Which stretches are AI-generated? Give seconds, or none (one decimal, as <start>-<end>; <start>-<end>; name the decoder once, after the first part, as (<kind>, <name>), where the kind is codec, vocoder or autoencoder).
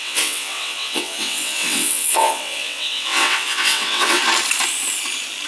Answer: 0.0-4.2 (vocoder, WaveNeXt)